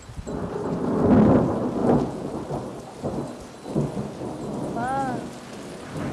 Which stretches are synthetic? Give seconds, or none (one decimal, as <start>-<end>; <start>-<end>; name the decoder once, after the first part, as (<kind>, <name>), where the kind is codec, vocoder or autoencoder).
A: 1.8-2.3 (vocoder, Vocos)